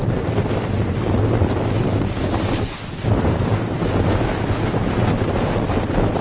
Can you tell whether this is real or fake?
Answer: real